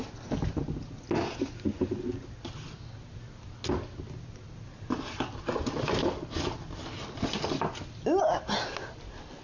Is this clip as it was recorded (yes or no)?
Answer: yes